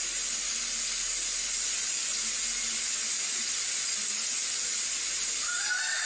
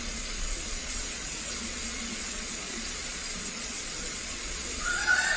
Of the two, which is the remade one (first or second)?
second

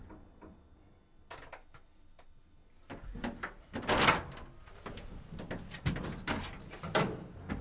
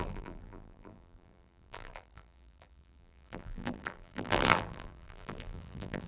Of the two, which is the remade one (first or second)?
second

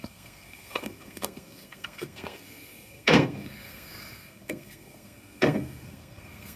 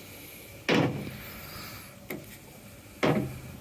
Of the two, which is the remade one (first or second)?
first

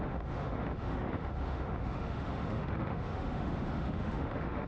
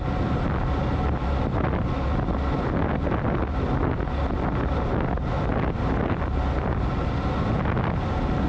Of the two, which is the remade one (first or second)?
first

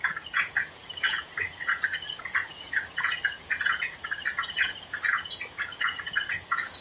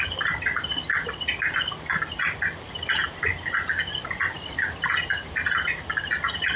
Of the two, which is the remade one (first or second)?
first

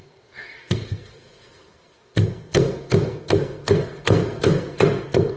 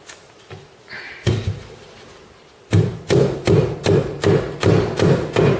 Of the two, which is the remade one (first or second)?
first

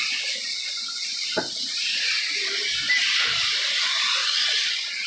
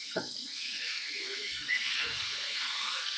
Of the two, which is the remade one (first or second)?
second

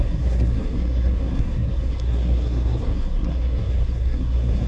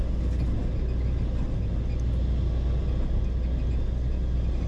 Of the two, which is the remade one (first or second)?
first